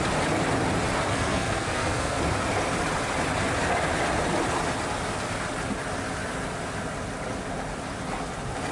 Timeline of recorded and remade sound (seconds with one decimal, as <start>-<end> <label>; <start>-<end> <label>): 0.0-1.1 recorded; 1.1-2.2 remade; 2.2-8.7 recorded